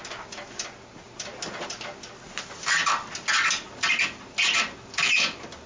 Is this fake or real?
real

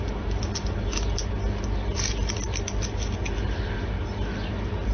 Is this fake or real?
real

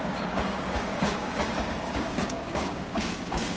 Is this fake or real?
fake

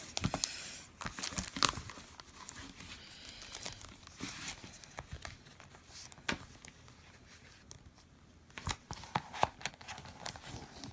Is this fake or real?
real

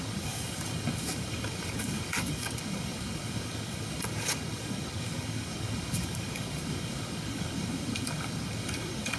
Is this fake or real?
fake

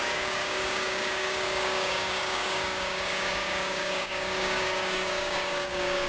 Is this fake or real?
fake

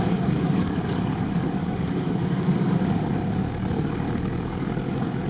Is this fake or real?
fake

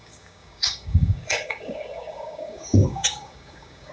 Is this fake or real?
fake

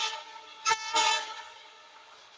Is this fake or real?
fake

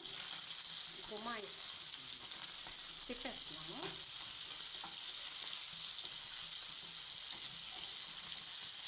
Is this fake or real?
real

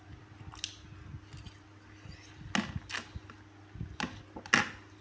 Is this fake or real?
real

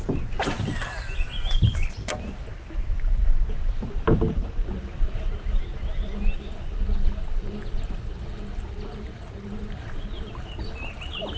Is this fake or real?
real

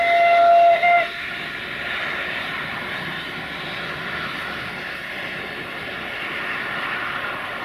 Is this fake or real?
real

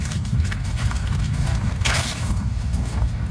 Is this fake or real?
fake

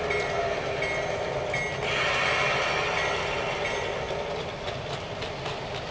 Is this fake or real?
real